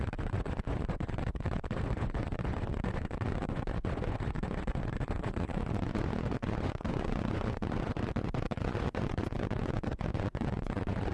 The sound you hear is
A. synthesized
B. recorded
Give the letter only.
A